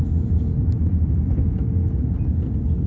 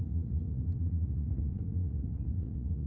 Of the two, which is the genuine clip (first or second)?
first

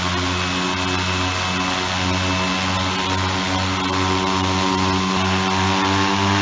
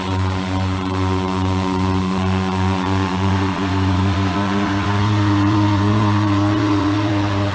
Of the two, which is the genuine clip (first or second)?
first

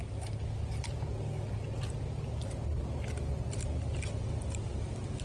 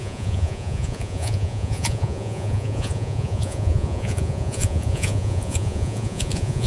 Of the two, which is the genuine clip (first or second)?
first